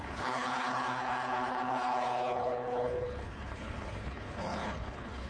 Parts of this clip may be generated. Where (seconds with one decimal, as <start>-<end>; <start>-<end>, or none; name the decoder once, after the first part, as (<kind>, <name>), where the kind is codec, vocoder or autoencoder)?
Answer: 0.0-5.3 (codec, HILCodec)

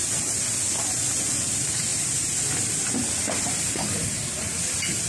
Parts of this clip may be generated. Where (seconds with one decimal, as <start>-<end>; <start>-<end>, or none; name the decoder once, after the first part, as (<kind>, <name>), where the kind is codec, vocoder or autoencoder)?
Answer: none

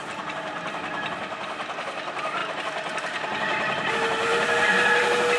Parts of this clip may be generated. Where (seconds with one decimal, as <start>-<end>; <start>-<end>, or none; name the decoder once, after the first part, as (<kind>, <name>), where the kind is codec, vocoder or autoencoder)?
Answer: none

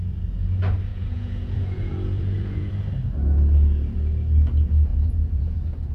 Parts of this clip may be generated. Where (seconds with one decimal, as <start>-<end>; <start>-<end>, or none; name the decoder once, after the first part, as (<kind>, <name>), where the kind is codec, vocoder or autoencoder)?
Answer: 0.9-2.7 (vocoder, Vocos); 4.9-5.9